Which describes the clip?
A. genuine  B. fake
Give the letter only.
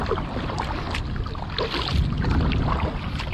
A